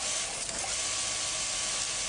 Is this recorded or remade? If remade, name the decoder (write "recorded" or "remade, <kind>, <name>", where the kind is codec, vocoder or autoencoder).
recorded